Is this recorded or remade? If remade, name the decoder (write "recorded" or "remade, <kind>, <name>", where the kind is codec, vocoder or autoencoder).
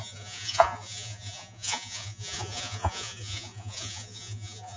remade, vocoder, Vocos